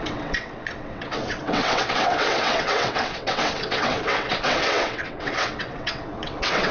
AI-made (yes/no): yes